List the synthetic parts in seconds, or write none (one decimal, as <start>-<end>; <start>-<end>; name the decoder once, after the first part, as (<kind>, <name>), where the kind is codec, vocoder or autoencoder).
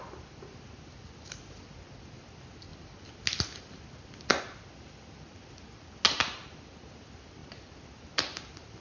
none